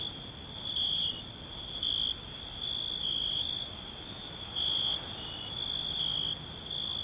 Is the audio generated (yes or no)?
no